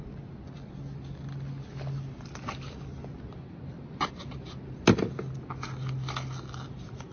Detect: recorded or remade recorded